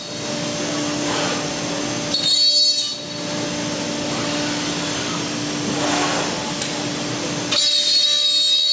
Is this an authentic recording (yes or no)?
yes